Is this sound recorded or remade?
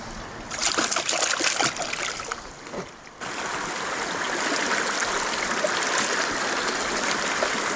recorded